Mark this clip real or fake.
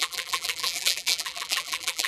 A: fake